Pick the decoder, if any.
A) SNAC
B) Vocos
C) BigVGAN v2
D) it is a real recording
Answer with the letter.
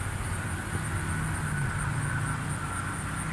D